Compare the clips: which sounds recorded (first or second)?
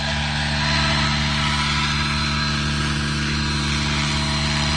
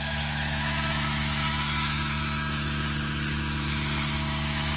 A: first